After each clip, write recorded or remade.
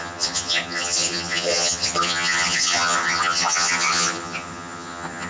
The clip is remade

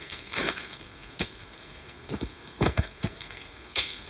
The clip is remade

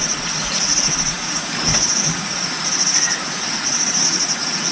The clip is remade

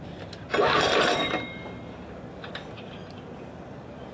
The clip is recorded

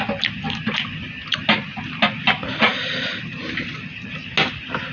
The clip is recorded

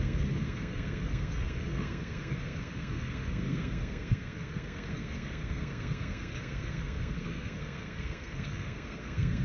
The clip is remade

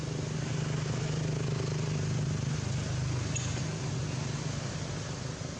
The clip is recorded